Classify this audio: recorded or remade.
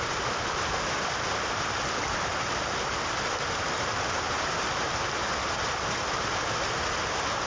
recorded